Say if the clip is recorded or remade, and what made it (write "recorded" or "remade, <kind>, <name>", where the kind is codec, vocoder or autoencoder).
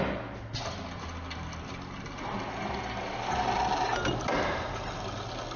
recorded